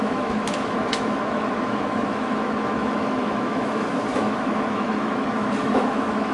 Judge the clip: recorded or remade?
remade